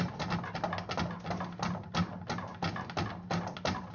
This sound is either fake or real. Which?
real